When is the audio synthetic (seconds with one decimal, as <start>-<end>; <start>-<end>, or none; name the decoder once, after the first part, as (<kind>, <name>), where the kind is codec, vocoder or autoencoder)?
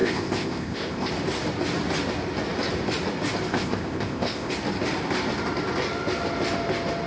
0.0-1.1 (codec, ZipCodec); 3.5-4.5